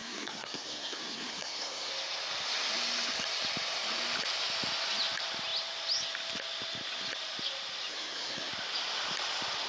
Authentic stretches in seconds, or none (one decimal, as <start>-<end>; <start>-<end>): 1.9-7.9; 8.5-9.7